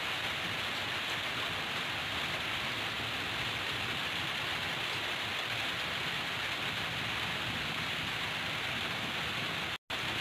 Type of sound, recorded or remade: recorded